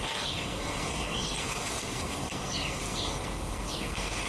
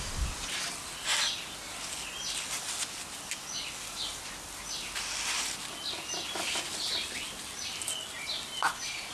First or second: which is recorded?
second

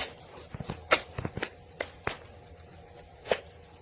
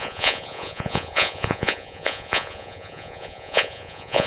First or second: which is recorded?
first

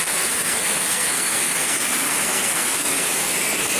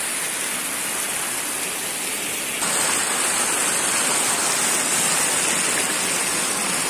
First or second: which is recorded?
second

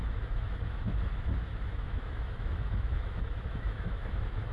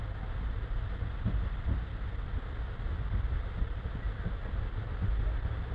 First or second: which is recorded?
second